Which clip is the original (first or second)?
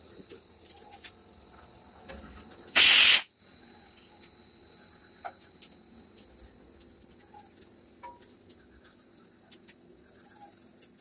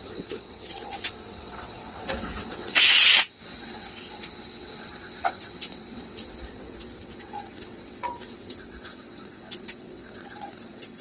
first